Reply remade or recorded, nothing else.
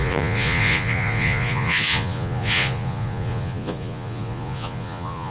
remade